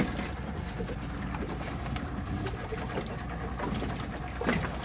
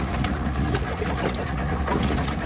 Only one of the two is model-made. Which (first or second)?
second